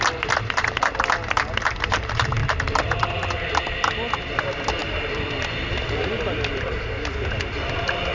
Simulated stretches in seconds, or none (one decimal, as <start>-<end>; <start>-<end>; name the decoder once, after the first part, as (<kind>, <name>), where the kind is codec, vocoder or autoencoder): none